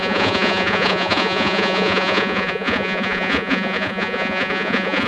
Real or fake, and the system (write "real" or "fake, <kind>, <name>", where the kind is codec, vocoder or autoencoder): fake, vocoder, Vocos